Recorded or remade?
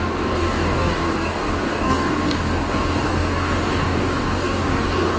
remade